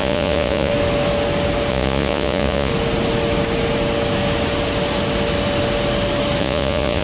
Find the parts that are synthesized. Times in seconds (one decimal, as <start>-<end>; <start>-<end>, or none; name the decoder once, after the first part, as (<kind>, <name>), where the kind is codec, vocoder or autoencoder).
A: 0.0-0.7 (vocoder, Vocos); 1.7-2.7; 6.4-7.0